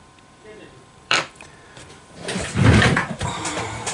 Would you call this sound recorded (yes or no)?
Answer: no